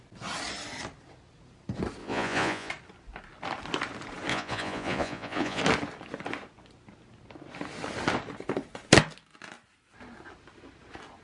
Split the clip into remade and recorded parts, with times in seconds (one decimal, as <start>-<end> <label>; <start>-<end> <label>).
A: 0.0-2.0 recorded; 2.0-2.7 remade; 2.7-4.3 recorded; 4.3-5.6 remade; 5.6-11.2 recorded